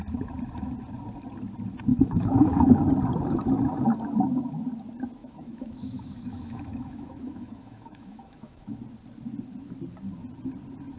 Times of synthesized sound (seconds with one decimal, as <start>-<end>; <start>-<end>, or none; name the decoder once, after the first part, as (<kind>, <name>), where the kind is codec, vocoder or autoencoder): 1.9-2.8 (autoencoder, DAC-VAE); 5.2-8.7